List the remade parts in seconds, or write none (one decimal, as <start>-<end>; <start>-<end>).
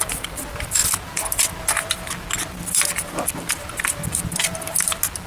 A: none